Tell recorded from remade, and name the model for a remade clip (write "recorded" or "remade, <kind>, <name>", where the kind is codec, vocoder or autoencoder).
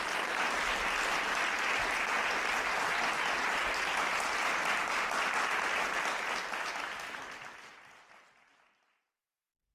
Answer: recorded